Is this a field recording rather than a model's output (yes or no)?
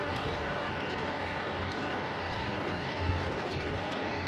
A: no